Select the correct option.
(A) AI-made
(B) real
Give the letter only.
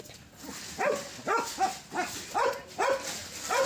B